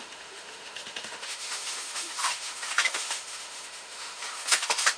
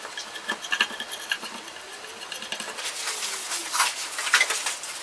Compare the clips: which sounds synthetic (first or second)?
first